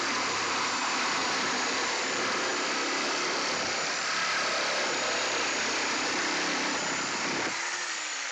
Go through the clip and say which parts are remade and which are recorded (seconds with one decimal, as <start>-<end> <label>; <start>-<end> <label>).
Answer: 0.0-1.2 remade; 1.2-1.7 recorded; 1.7-8.3 remade